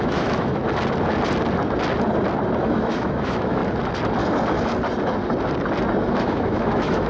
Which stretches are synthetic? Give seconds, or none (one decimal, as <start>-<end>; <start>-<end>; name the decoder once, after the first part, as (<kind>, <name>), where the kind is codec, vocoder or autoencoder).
0.0-0.6 (autoencoder, DAC-VAE); 2.6-3.6; 6.1-7.1